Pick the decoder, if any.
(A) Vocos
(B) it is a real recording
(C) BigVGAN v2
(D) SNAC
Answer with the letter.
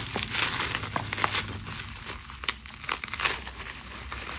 B